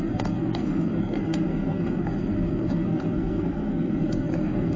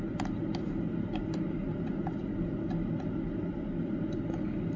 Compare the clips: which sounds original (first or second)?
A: second